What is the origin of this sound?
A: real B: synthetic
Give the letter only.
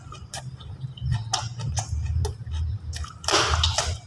A